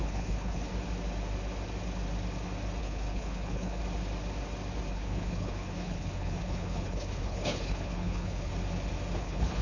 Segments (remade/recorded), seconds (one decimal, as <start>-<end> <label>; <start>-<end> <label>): 0.0-0.7 remade; 0.7-2.8 recorded; 2.8-3.8 remade; 3.8-4.9 recorded; 4.9-8.5 remade; 8.5-9.2 recorded; 9.2-9.6 remade